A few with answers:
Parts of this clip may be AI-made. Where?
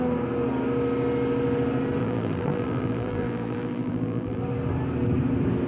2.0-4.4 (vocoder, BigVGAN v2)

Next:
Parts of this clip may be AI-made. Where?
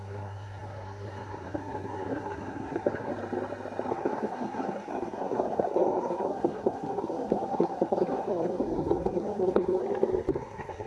0.0-3.1 (codec, SNAC); 3.9-9.8; 10.3-10.9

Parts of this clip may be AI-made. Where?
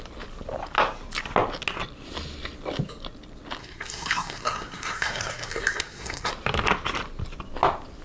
3.6-6.3 (codec, SNAC)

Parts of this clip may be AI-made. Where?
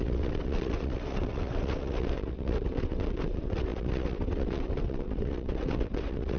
0.0-6.4 (vocoder, WaveNeXt)